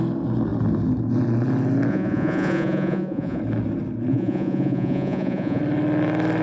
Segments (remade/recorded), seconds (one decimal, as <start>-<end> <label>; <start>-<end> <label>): 0.0-1.9 recorded; 1.9-3.4 remade; 3.4-4.1 recorded; 4.1-5.6 remade; 5.6-6.4 recorded